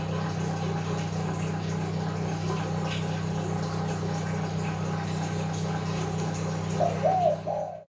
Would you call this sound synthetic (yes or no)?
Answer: no